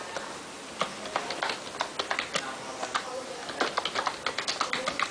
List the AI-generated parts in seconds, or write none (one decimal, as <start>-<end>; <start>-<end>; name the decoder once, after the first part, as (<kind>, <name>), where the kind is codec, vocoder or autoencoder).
none